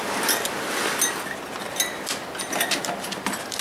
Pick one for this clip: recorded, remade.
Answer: recorded